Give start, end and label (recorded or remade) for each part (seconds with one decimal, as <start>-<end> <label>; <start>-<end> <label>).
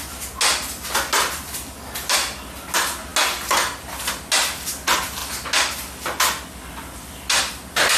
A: 0.0-8.0 recorded